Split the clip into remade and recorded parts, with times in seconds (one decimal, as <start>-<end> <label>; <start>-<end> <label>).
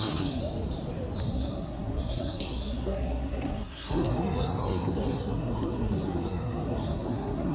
0.0-0.4 remade; 0.4-1.2 recorded; 1.2-7.5 remade